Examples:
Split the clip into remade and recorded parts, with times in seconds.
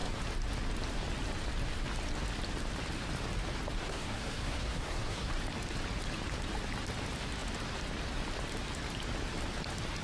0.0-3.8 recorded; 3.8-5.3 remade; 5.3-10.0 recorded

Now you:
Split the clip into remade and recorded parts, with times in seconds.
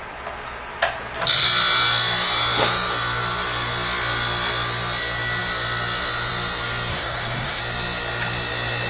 0.0-6.9 recorded; 6.9-7.6 remade; 7.6-8.9 recorded